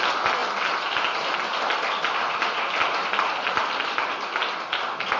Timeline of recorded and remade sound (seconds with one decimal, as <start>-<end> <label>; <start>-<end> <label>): 0.0-5.2 recorded